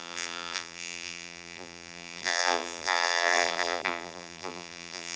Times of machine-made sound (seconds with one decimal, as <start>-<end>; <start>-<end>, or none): 0.0-5.2